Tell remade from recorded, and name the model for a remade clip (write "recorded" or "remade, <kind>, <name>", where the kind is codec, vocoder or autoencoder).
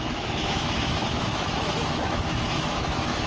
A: remade, autoencoder, DAC-VAE